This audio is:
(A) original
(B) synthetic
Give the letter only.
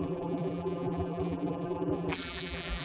B